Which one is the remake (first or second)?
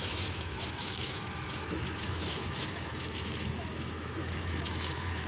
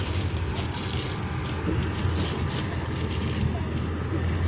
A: first